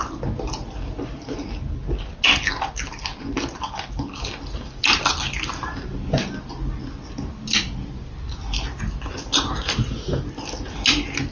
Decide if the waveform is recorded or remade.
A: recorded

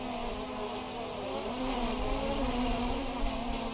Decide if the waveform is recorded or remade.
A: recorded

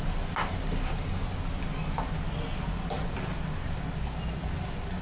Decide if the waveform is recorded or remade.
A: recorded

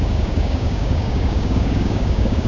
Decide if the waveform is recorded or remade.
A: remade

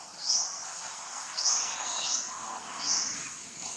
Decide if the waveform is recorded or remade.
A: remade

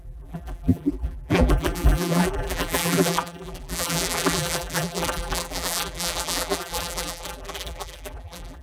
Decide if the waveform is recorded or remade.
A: remade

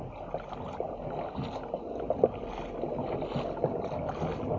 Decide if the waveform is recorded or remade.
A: recorded